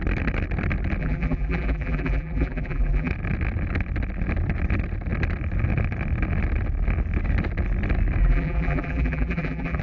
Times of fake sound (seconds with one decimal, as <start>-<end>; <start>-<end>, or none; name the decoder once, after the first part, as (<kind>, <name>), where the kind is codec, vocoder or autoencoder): 1.0-3.1 (vocoder, BigVGAN v2); 8.2-9.8